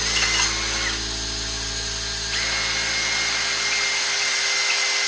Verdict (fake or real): real